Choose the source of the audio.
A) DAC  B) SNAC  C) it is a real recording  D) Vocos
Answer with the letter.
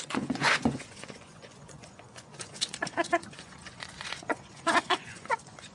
D